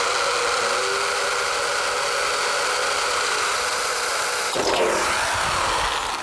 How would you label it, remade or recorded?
recorded